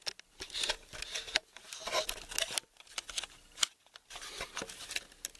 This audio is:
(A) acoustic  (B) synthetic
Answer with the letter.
A